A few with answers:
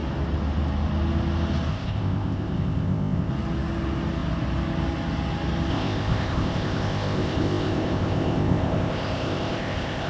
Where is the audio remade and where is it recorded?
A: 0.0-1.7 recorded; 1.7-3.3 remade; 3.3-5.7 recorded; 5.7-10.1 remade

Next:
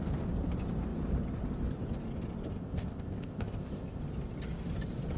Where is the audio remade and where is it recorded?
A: 0.0-2.5 recorded; 2.5-4.0 remade; 4.0-5.2 recorded

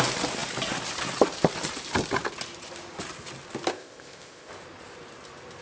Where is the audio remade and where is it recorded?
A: 0.0-3.7 recorded; 3.7-4.5 remade; 4.5-5.6 recorded

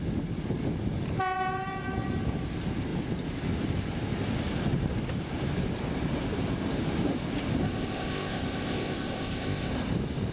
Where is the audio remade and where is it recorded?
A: 0.0-7.6 recorded; 7.6-9.7 remade; 9.7-10.3 recorded